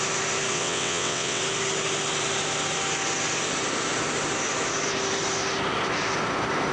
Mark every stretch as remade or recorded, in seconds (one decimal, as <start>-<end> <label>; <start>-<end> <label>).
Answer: 0.0-0.5 recorded; 0.5-1.4 remade; 1.4-6.7 recorded